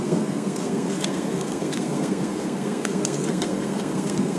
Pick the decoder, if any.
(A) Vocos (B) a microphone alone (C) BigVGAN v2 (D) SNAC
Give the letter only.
D